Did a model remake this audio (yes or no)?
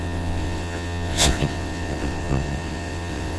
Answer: yes